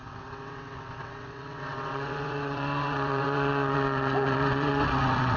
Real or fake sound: fake